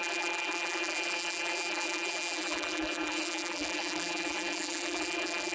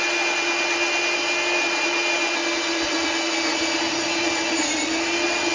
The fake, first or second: first